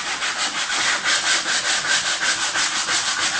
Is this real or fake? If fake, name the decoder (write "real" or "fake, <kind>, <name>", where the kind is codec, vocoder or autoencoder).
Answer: real